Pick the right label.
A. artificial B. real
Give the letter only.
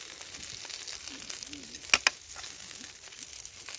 B